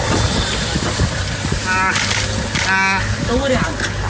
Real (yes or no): yes